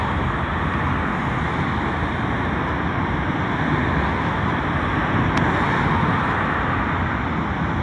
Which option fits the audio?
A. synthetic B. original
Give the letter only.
B